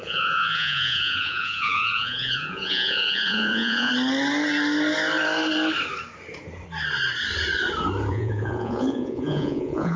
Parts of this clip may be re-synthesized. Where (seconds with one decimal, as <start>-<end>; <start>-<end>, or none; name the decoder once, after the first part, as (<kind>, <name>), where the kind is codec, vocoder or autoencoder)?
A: 0.0-3.9 (vocoder, Vocos); 8.1-10.0